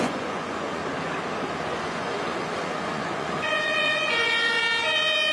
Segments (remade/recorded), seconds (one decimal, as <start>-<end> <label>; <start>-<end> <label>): 0.0-0.8 remade; 0.8-1.8 recorded; 1.8-4.6 remade; 4.6-5.3 recorded